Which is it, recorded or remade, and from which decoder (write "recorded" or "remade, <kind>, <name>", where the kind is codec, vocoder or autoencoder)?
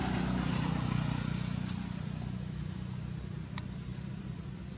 recorded